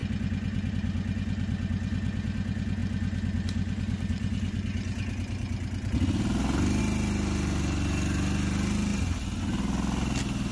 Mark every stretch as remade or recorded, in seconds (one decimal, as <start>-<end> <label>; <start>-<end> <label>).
0.0-10.5 recorded

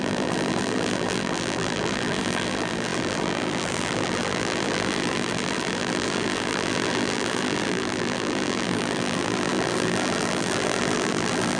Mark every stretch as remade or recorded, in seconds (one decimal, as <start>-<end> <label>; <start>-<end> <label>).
0.0-11.6 remade

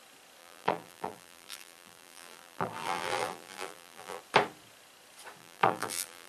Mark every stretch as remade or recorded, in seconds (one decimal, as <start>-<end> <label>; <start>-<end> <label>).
0.0-0.4 recorded; 0.4-4.2 remade; 4.2-5.4 recorded; 5.4-6.3 remade

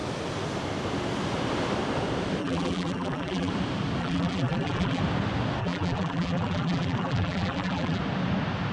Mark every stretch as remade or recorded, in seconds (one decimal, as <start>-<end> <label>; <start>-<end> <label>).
0.0-2.4 recorded; 2.4-3.5 remade; 3.5-4.0 recorded; 4.0-5.0 remade; 5.0-5.6 recorded; 5.6-8.0 remade; 8.0-8.7 recorded

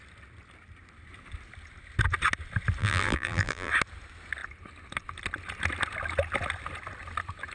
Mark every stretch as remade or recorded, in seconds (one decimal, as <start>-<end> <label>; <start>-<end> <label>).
0.0-2.8 recorded; 2.8-3.7 remade; 3.7-7.5 recorded

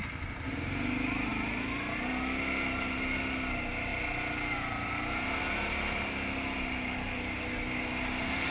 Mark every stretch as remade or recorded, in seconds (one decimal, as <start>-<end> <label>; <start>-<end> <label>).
0.0-8.5 recorded

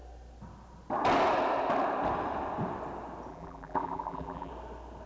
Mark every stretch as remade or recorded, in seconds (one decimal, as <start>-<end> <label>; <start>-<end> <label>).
0.0-3.3 recorded; 3.3-4.5 remade; 4.5-5.1 recorded

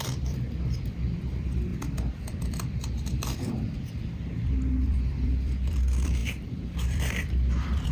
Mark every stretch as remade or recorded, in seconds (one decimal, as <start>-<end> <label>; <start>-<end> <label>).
0.0-7.9 remade